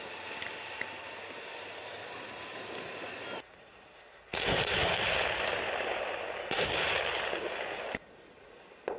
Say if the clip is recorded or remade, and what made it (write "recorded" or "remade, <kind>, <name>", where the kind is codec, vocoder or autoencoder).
recorded